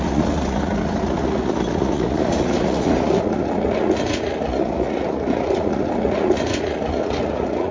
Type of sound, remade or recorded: remade